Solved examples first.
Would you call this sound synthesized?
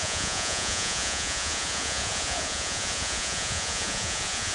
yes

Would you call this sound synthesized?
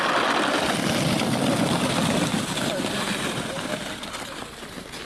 no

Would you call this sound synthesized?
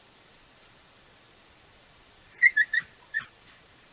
yes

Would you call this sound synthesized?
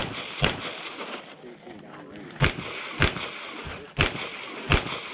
no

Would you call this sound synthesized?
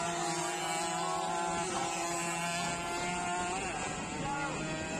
no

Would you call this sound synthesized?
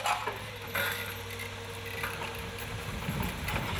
no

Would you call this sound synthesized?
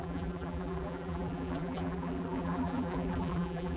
yes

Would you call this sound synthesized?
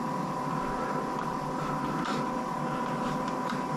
no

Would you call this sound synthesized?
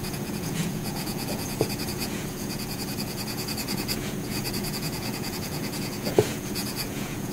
yes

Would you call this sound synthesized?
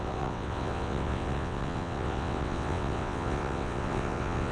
yes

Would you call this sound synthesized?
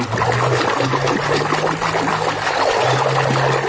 no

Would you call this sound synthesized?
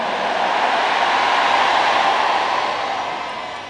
no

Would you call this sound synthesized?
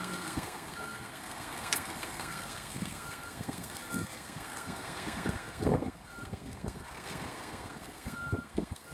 yes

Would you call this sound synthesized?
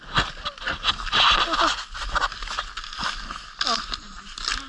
no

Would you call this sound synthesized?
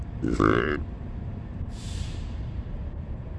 yes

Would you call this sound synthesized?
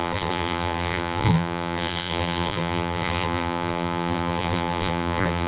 yes